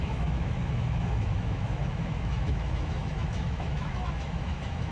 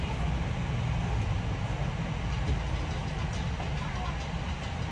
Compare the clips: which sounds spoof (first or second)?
first